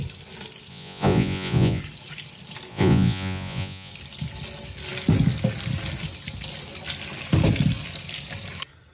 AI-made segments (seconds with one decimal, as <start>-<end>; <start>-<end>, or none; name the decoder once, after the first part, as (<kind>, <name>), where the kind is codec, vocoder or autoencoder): 0.7-1.8 (vocoder, Vocos); 2.7-3.9